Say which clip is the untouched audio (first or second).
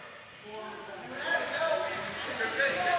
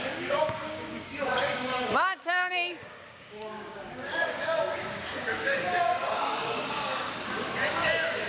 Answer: first